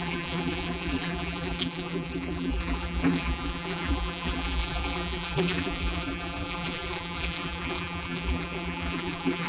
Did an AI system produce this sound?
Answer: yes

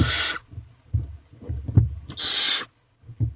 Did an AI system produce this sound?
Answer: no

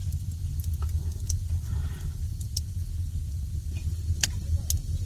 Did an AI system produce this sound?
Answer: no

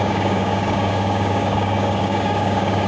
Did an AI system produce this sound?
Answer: yes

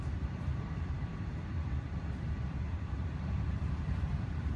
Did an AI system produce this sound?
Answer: yes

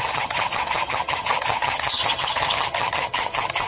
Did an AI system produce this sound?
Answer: yes